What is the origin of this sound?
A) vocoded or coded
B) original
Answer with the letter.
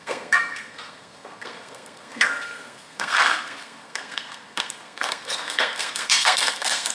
A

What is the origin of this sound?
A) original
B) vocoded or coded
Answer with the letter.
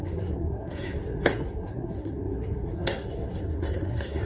B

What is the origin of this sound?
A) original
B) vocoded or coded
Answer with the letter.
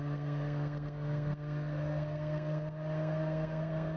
B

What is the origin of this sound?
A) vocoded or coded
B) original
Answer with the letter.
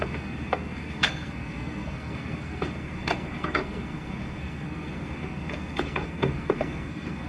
A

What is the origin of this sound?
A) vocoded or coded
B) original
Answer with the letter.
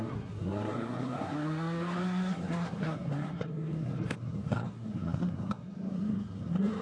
A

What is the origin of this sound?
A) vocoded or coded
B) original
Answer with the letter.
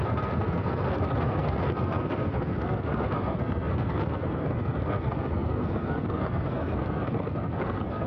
A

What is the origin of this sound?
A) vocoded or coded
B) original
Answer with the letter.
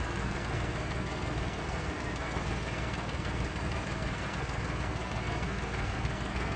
A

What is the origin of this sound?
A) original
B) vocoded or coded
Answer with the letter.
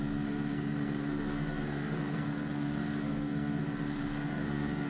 B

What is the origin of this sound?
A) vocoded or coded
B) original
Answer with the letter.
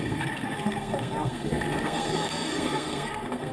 A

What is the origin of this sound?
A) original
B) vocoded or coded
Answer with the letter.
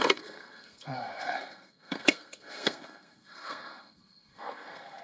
B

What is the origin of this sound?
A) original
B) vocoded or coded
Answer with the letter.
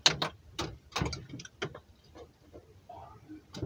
A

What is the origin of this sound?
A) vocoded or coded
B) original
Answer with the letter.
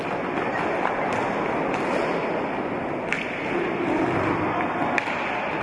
B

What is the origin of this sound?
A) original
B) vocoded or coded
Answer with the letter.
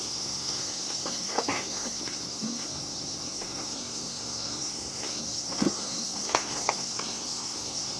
B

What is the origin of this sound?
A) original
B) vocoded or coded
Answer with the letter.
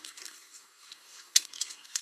B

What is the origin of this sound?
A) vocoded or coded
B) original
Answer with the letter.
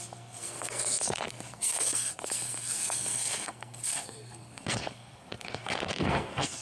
A